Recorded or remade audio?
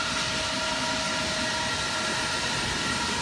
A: recorded